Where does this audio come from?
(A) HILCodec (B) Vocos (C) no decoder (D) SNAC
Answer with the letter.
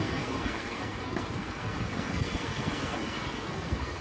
D